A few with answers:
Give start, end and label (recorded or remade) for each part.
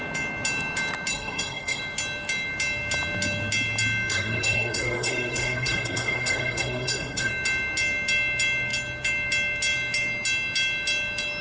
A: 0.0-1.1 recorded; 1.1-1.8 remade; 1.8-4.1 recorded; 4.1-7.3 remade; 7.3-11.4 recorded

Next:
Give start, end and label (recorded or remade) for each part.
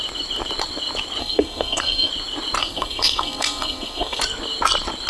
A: 0.0-1.2 recorded; 1.2-2.1 remade; 2.1-2.6 recorded; 2.6-4.2 remade; 4.2-5.1 recorded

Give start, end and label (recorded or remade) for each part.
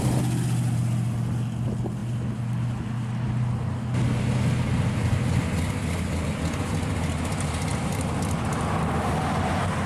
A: 0.0-9.9 recorded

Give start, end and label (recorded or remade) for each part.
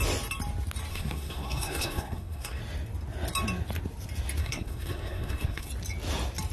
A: 0.0-0.9 recorded; 0.9-2.6 remade; 2.6-4.4 recorded; 4.4-5.7 remade; 5.7-6.5 recorded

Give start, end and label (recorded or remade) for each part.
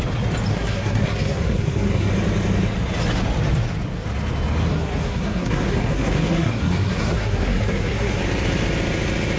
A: 0.0-0.5 recorded; 0.5-2.1 remade; 2.1-4.7 recorded; 4.7-8.2 remade; 8.2-9.4 recorded